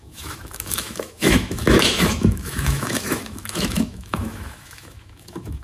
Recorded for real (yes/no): no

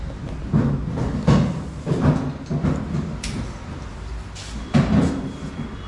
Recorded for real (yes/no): yes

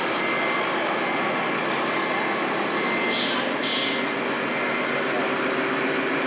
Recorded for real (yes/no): yes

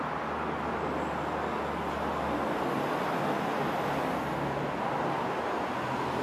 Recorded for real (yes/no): yes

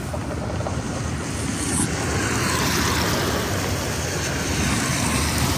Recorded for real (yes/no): yes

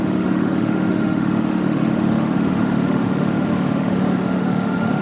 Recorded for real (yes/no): no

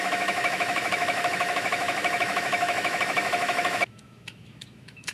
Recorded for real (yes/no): no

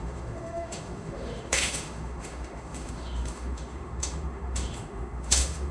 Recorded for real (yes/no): no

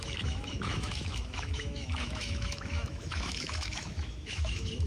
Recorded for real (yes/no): no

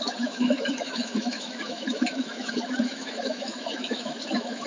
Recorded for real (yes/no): no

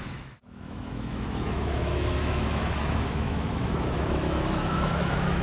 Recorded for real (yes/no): no